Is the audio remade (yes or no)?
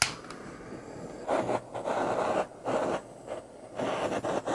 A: no